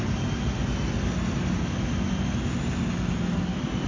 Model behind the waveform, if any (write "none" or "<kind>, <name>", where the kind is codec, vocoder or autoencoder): none